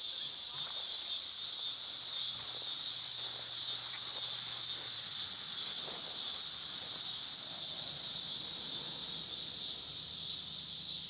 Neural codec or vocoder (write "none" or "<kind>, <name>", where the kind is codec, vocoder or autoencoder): none